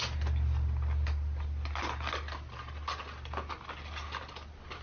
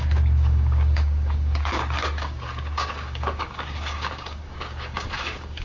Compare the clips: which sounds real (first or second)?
first